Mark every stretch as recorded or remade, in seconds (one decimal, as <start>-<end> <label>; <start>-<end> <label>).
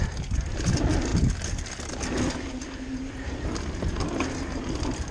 0.0-5.1 recorded